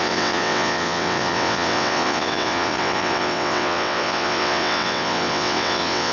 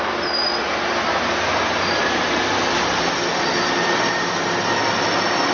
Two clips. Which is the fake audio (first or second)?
first